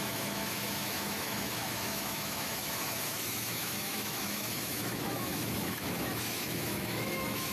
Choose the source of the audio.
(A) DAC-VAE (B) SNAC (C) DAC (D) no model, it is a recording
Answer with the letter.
A